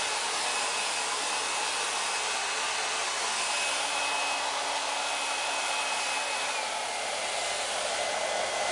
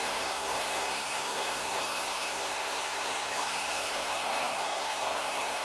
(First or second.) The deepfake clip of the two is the second